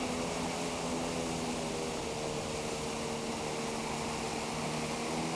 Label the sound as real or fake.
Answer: real